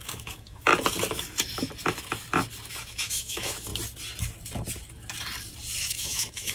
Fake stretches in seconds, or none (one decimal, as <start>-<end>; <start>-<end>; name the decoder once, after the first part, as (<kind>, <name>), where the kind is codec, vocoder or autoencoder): 0.0-0.7 (autoencoder, DAC-VAE); 2.7-3.7; 5.8-6.5